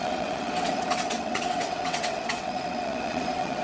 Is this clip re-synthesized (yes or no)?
yes